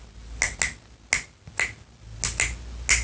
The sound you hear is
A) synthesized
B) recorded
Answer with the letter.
B